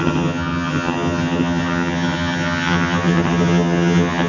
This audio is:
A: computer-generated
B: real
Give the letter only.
A